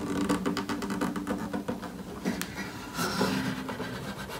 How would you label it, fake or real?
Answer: real